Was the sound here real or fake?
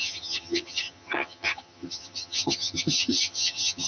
fake